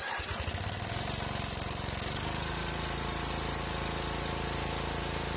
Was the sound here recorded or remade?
recorded